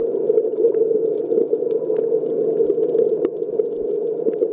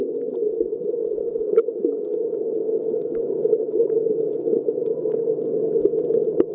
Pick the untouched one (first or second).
first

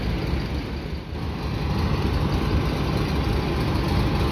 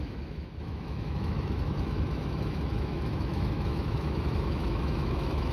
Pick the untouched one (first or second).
first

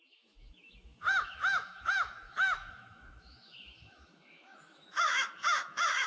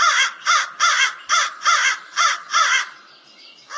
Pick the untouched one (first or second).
second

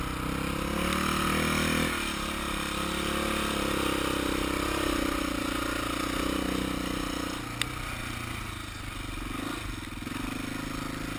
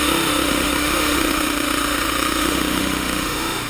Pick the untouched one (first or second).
first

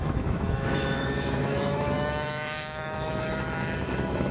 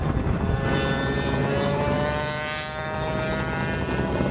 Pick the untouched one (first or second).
second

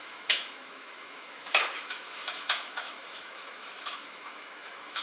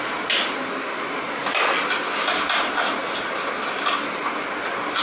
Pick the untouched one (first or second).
second